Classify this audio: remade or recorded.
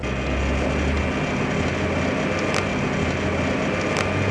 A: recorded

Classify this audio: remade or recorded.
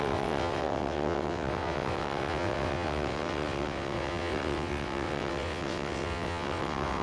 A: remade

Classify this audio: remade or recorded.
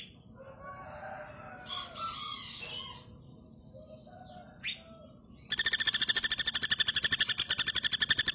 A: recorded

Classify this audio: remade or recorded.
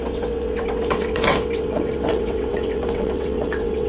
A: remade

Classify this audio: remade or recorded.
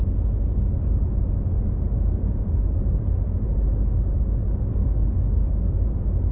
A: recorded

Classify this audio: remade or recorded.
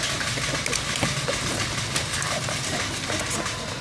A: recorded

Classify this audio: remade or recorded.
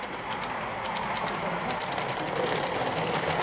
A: recorded